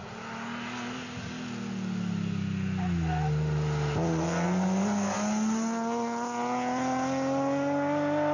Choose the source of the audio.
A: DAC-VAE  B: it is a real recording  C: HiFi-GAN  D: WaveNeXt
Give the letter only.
B